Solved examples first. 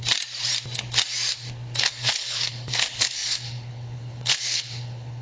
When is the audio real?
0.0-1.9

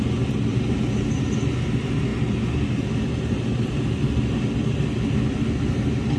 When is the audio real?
0.0-0.5; 1.1-6.2

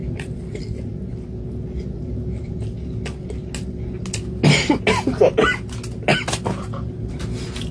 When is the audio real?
0.6-6.1; 7.2-7.7

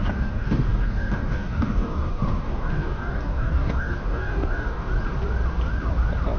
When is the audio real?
4.9-6.4

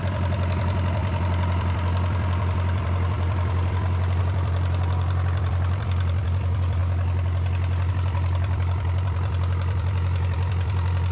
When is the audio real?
6.8-7.9

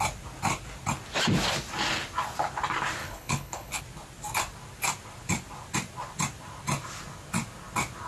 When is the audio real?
0.0-3.0; 3.8-8.1